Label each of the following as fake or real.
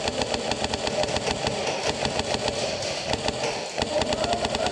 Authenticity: real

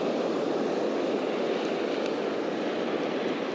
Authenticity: real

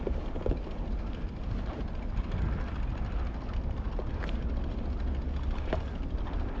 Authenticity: real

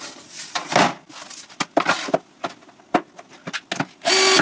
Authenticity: real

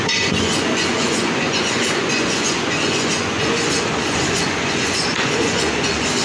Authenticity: fake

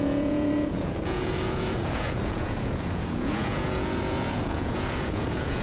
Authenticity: fake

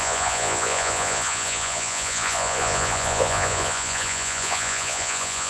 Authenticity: fake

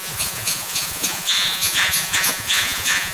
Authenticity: fake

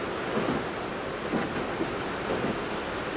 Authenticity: real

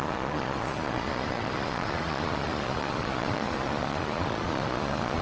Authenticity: fake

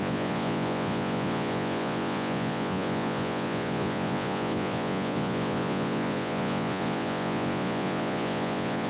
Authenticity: fake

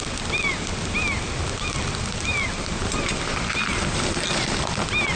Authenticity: real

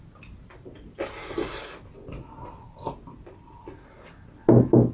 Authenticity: real